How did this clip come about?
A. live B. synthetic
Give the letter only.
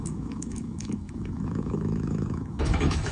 B